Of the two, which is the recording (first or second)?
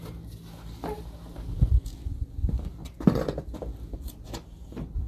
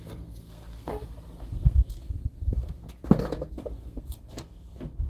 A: first